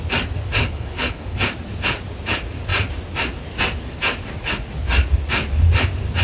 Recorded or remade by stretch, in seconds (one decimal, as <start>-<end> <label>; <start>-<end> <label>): 0.0-0.6 recorded; 0.6-1.4 remade; 1.4-6.2 recorded